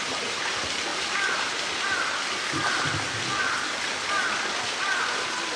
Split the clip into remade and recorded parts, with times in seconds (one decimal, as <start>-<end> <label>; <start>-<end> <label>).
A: 0.0-5.6 recorded